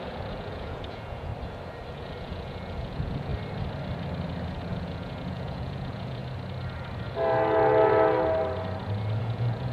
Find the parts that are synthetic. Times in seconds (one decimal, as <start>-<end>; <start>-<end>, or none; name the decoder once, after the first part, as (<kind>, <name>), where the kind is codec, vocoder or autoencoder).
0.0-1.3 (vocoder, Vocos); 1.9-3.3; 4.6-6.2; 9.2-9.7

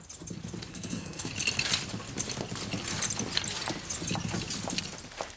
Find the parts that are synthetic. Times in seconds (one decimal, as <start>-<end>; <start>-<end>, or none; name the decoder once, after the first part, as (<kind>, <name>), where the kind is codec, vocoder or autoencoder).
0.7-1.3 (codec, SNAC)

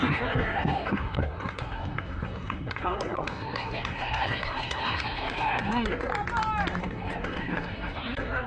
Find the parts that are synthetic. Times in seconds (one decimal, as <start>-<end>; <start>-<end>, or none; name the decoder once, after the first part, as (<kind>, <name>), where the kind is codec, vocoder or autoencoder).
0.0-6.1 (codec, SNAC); 6.8-8.5